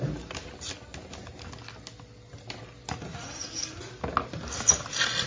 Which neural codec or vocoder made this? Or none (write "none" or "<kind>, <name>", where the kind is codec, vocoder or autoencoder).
none